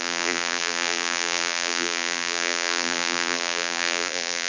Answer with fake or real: fake